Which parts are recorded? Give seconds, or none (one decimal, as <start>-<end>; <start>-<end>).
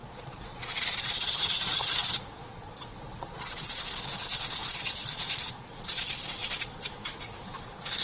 3.8-4.6; 5.5-8.0